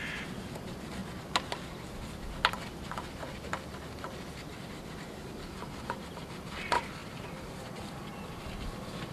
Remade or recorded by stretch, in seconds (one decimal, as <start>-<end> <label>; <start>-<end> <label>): 0.0-9.1 recorded